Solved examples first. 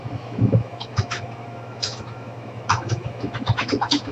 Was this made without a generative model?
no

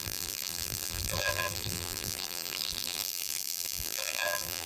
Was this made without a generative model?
no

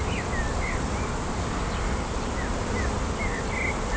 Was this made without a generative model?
yes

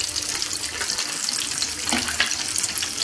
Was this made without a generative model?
yes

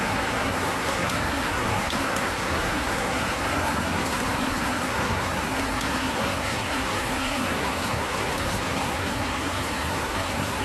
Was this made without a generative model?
no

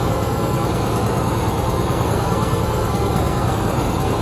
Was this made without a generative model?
no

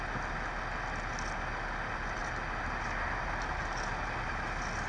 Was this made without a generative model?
yes